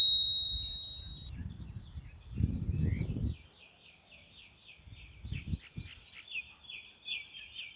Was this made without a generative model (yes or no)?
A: no